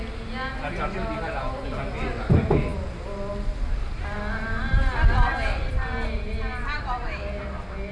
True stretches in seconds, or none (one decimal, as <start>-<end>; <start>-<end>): 0.0-7.9